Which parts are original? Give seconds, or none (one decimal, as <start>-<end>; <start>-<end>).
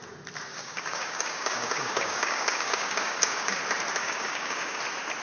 0.0-0.5; 3.6-4.0; 4.8-5.2